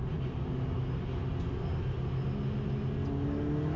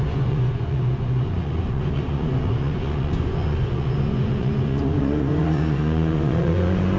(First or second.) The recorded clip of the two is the first